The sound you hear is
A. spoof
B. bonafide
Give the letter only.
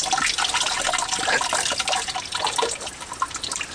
B